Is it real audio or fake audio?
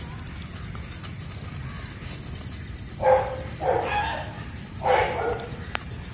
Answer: real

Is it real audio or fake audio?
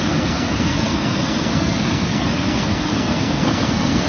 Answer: fake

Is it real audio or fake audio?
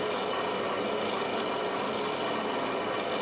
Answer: real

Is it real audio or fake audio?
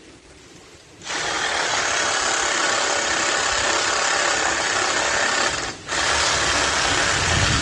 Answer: real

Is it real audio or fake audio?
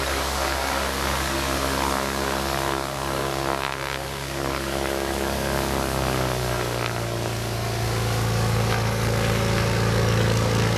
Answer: fake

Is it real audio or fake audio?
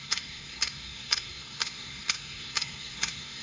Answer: fake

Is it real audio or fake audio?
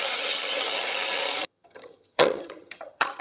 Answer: fake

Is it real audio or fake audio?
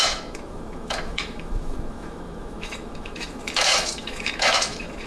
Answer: fake